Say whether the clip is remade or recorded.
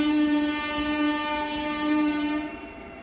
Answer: remade